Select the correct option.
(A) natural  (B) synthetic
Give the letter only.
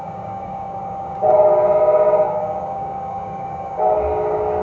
B